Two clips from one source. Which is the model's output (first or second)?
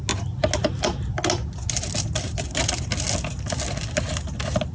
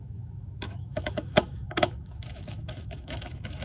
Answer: second